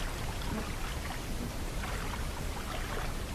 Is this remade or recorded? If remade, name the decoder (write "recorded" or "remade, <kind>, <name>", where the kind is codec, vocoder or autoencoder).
recorded